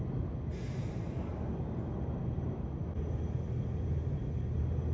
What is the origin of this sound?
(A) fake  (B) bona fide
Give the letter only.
B